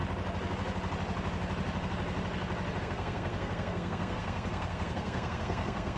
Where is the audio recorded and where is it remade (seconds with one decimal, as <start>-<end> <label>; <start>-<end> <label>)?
0.0-2.8 recorded; 2.8-6.0 remade